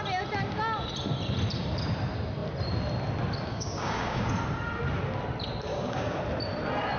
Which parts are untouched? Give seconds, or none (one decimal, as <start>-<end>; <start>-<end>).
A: 0.0-3.5; 4.3-5.7; 6.2-7.0